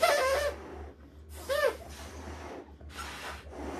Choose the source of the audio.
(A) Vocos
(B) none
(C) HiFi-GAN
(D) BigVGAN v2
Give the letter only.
B